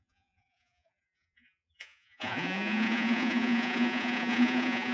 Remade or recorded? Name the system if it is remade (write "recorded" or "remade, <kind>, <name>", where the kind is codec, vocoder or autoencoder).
remade, vocoder, Vocos